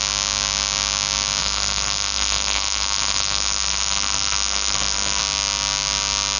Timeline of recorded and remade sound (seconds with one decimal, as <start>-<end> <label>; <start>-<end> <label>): 0.0-1.4 recorded; 1.4-5.2 remade; 5.2-6.4 recorded